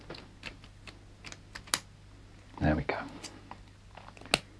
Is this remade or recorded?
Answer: recorded